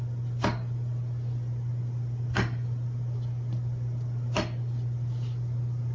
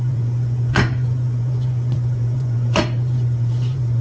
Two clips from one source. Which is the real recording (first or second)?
first